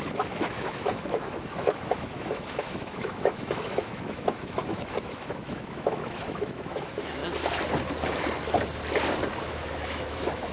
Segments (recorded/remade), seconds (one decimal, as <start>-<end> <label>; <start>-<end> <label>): 0.0-7.2 remade; 7.2-9.5 recorded; 9.5-10.5 remade